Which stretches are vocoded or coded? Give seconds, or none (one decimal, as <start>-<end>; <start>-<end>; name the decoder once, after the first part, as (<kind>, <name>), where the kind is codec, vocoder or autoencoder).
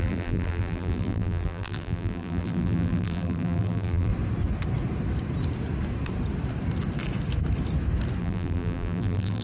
0.0-4.1 (vocoder, BigVGAN v2); 8.2-9.4